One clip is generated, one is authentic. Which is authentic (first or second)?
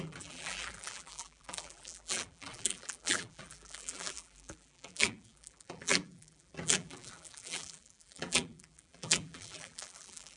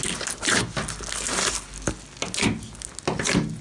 second